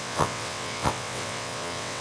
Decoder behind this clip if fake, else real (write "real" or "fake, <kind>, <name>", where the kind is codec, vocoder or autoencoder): fake, vocoder, WaveNeXt